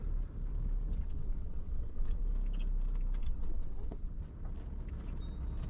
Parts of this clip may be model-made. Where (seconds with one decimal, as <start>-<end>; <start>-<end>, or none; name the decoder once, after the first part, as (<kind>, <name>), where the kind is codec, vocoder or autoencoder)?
1.0-2.2 (vocoder, WaveNeXt); 3.2-4.2